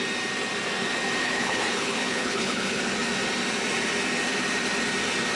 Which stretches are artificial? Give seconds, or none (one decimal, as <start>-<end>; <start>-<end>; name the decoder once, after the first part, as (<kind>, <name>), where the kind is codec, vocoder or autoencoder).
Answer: 1.2-2.8 (codec, HILCodec)